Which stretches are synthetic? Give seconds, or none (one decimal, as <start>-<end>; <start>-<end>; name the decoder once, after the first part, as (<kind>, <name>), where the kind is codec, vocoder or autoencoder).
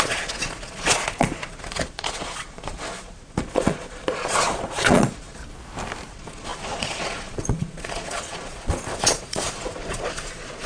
0.0-5.4 (vocoder, Vocos); 6.1-10.7